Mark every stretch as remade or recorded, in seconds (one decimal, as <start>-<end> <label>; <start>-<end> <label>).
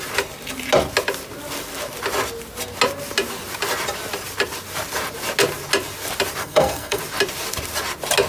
0.0-6.4 recorded; 6.4-7.0 remade; 7.0-8.3 recorded